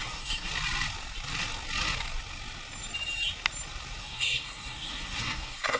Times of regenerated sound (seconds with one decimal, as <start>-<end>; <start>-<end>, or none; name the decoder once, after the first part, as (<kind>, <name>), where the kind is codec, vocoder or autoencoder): 0.0-0.5 (codec, SNAC); 4.0-5.8